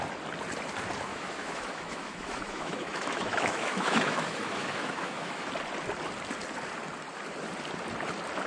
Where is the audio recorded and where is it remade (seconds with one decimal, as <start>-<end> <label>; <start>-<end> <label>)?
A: 0.0-1.1 recorded; 1.1-5.5 remade; 5.5-8.5 recorded